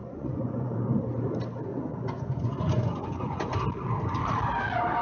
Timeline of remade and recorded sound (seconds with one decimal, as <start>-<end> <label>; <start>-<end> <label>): 0.0-1.0 remade; 1.0-1.7 recorded; 1.7-3.5 remade; 3.5-5.0 recorded